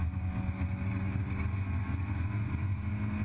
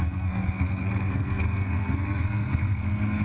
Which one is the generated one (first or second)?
second